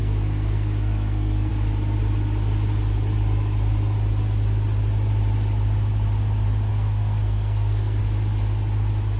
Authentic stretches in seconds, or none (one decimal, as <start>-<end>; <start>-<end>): 1.5-6.7; 8.0-9.2